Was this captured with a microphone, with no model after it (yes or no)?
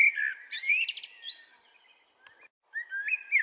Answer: yes